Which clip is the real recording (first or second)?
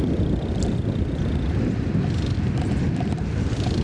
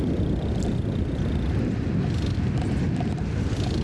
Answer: second